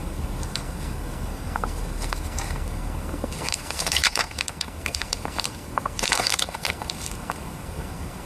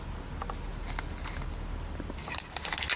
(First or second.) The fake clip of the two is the first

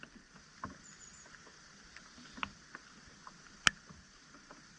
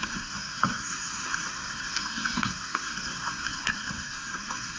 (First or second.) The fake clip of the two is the second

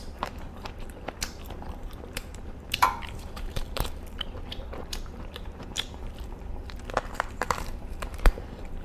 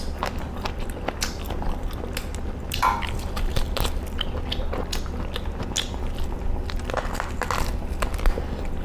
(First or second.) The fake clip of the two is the first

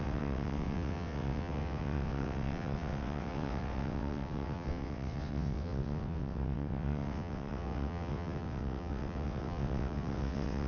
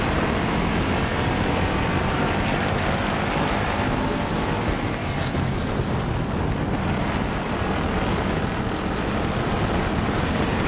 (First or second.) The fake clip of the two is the first